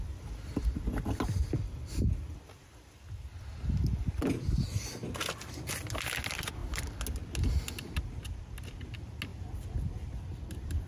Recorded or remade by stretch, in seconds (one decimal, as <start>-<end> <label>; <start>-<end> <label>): 0.0-10.9 recorded